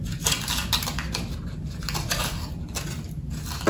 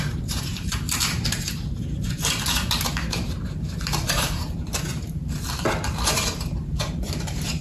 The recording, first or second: first